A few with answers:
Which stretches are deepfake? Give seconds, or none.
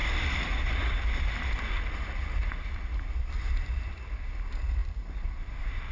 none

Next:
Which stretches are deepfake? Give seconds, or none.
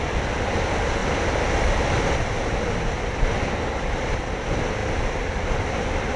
none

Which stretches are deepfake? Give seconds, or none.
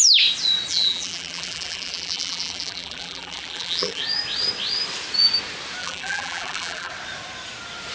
0.7-4.0 (vocoder, BigVGAN v2); 5.8-6.9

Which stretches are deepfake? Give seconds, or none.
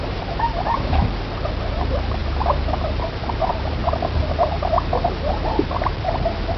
0.0-1.0 (vocoder, BigVGAN v2); 1.7-3.8; 4.3-6.6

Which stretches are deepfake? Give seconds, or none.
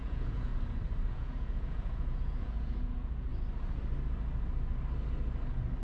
0.0-0.5 (vocoder, Vocos); 1.1-3.3